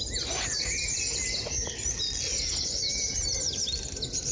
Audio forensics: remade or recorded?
recorded